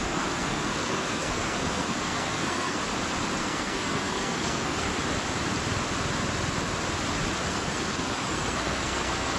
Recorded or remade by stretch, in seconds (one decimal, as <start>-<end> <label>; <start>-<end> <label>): 0.0-2.8 remade; 2.8-3.4 recorded; 3.4-4.9 remade; 4.9-7.5 recorded; 7.5-9.4 remade